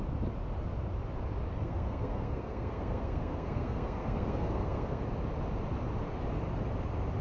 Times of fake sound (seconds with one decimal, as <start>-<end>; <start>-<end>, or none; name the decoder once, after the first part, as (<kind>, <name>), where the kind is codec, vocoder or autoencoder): 1.5-5.0 (codec, SNAC)